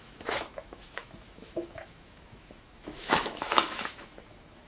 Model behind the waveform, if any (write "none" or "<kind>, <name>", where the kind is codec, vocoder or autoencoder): autoencoder, DAC-VAE